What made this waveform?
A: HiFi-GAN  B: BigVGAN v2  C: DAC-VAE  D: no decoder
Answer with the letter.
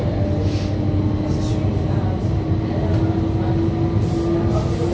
D